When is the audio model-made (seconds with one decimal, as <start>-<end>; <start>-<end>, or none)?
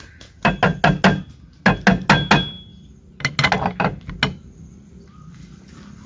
none